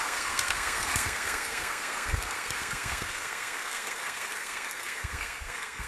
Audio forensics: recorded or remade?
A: remade